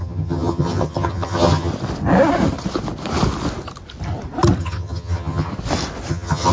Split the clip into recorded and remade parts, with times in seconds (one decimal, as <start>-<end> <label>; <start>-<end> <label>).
0.0-1.7 remade; 1.7-4.6 recorded; 4.6-5.5 remade; 5.5-6.1 recorded; 6.1-6.5 remade